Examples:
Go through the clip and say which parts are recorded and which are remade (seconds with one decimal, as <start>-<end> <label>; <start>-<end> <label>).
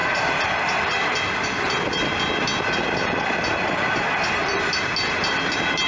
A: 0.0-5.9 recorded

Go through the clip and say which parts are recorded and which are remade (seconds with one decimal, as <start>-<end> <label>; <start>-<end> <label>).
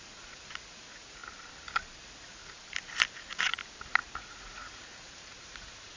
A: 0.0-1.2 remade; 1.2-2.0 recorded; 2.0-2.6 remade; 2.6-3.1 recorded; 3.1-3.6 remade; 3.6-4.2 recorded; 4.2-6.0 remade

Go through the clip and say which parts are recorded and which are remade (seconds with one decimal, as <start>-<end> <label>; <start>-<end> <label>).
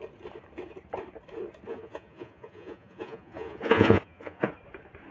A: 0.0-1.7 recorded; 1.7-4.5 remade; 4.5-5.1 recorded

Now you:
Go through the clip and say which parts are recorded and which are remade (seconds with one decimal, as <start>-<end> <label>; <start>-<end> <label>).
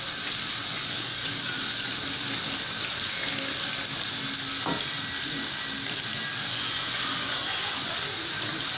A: 0.0-0.6 recorded; 0.6-1.9 remade; 1.9-6.5 recorded; 6.5-7.9 remade; 7.9-8.8 recorded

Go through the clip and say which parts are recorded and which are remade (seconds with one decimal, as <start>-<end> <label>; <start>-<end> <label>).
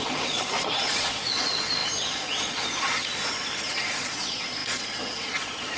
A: 0.0-5.8 remade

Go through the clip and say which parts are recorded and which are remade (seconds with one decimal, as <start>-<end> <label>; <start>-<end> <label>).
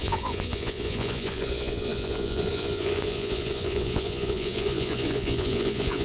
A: 0.0-6.0 remade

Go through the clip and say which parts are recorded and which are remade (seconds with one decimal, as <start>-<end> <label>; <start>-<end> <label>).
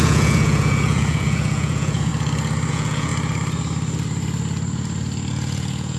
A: 0.0-2.1 remade; 2.1-2.7 recorded; 2.7-3.1 remade; 3.1-5.3 recorded; 5.3-6.0 remade